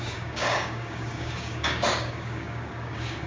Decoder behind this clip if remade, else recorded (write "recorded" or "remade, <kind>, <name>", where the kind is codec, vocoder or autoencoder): remade, codec, DAC